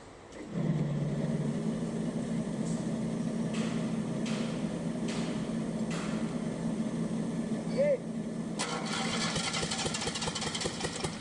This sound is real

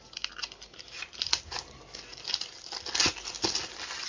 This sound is real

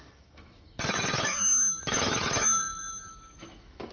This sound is fake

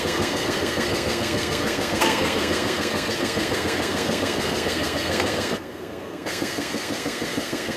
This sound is fake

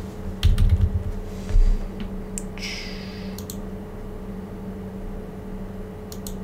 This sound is real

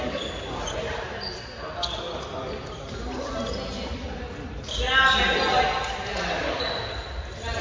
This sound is real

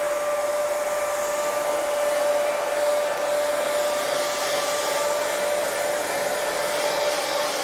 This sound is real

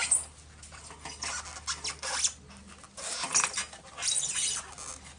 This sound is real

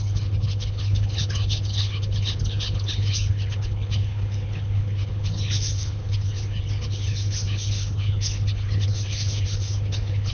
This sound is fake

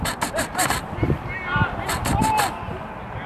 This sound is real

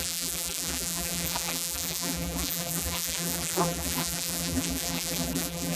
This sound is fake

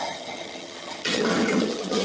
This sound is fake